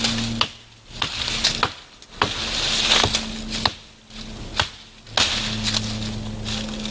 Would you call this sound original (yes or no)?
yes